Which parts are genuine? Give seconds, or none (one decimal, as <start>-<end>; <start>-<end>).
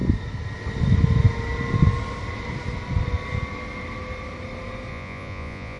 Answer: 0.0-4.9